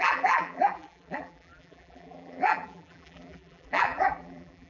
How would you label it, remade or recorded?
remade